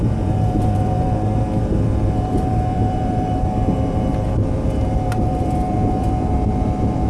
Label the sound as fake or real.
fake